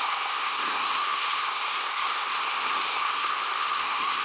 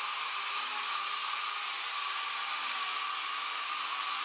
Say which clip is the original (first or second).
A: second